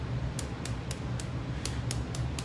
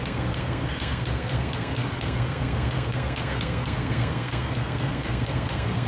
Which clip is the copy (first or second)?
second